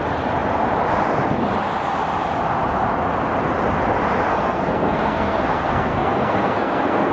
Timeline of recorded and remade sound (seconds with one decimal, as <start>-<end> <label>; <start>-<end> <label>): 0.0-4.3 recorded; 4.3-7.1 remade